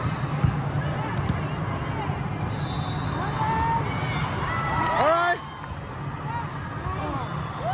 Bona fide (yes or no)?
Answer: yes